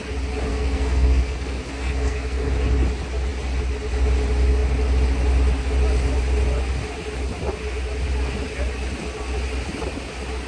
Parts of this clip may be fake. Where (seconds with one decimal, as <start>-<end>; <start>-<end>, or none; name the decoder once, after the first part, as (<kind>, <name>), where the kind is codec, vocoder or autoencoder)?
0.5-2.5 (codec, SNAC)

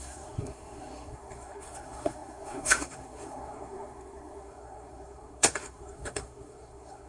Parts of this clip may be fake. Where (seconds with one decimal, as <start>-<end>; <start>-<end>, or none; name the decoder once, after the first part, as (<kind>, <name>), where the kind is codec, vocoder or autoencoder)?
0.0-7.1 (codec, SNAC)